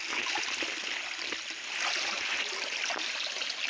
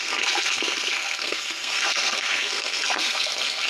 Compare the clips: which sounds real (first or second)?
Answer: first